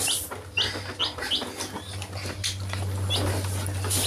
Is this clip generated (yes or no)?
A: no